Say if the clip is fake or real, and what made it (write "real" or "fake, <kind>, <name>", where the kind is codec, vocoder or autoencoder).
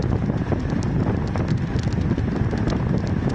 real